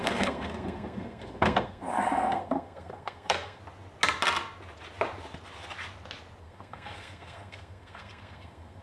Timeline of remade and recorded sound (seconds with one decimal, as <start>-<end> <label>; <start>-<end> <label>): 0.0-3.6 remade; 3.6-6.4 recorded; 6.4-8.8 remade